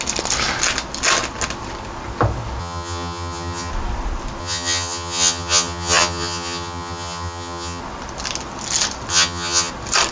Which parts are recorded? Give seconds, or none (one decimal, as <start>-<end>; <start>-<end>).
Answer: 0.0-2.6; 3.7-4.4; 7.8-9.1; 9.7-10.1